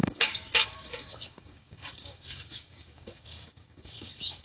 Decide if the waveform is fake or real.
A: fake